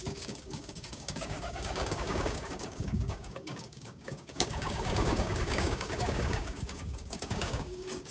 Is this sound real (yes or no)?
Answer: no